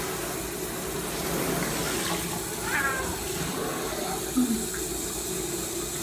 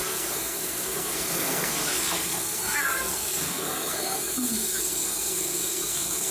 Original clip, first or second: first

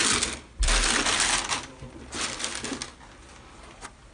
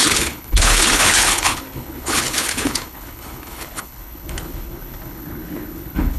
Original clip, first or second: first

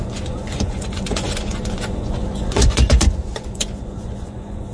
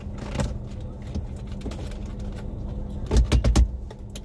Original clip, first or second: second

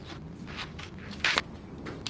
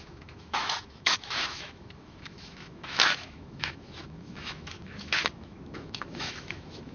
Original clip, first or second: first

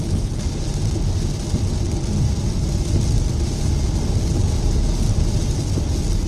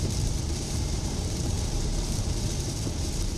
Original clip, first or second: first